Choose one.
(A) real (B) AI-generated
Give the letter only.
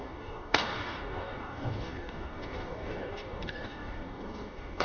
B